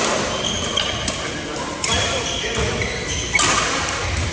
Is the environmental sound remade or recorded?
recorded